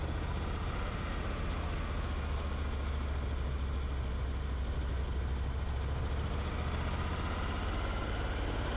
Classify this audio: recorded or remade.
recorded